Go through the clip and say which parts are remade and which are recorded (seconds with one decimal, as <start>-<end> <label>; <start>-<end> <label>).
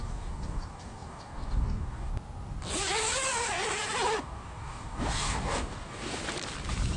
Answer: 0.0-2.1 remade; 2.1-4.2 recorded; 4.2-6.2 remade; 6.2-7.0 recorded